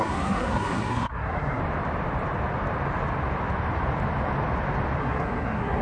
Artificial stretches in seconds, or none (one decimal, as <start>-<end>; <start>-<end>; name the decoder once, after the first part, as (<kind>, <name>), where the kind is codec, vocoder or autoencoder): 0.0-1.6 (codec, SNAC); 5.0-5.8